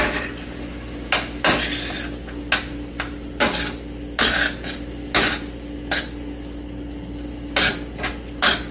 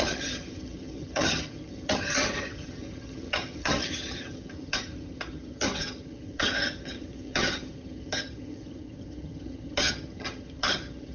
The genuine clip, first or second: first